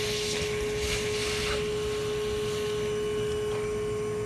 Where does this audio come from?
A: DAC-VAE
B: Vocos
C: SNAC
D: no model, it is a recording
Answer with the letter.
D